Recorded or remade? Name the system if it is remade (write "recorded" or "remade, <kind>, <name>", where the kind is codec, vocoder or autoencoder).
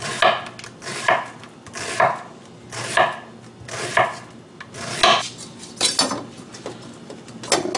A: recorded